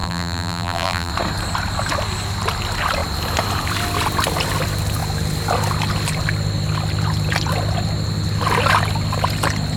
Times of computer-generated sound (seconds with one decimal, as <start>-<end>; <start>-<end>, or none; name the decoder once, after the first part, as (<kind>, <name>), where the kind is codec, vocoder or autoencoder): 0.0-1.1 (vocoder, BigVGAN v2)